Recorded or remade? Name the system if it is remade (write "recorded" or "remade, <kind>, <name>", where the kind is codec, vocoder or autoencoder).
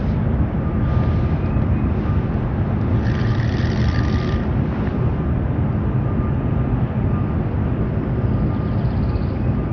recorded